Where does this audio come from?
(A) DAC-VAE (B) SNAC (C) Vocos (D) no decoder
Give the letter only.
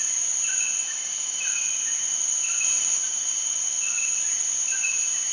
C